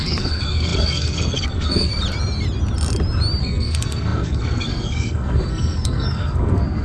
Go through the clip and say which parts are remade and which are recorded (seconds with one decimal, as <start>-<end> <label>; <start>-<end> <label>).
0.0-1.9 remade; 1.9-3.4 recorded; 3.4-6.8 remade